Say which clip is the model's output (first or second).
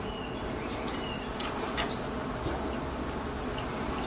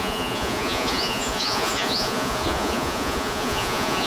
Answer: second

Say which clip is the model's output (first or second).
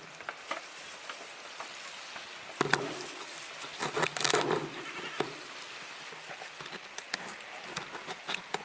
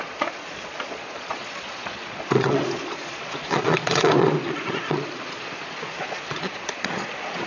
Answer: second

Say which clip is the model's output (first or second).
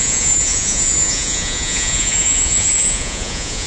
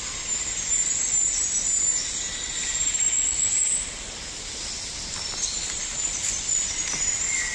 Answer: first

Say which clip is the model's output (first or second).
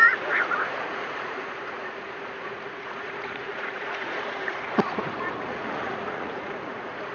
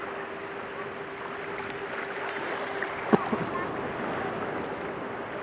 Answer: first